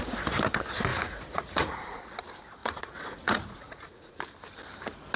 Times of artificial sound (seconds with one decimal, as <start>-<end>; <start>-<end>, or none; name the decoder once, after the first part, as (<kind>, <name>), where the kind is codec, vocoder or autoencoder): 0.9-2.0 (vocoder, Vocos); 2.6-4.2